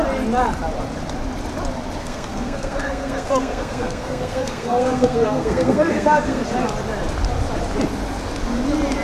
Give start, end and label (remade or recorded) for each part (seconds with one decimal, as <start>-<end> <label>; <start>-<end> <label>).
0.0-2.0 recorded; 2.0-6.4 remade; 6.4-9.0 recorded